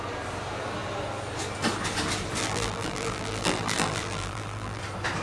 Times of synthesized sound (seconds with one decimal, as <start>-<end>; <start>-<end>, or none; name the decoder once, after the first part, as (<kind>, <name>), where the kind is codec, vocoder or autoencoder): 2.4-4.8 (vocoder, BigVGAN v2)